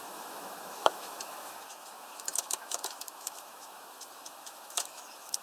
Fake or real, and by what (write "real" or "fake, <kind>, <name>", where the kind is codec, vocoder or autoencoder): fake, autoencoder, DAC-VAE